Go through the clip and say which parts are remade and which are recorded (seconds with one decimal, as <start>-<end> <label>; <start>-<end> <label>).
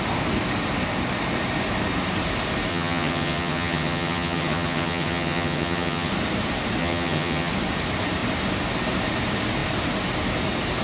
0.0-2.7 recorded; 2.7-6.1 remade; 6.1-6.8 recorded; 6.8-7.5 remade; 7.5-10.8 recorded